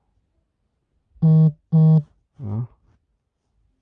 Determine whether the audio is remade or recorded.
recorded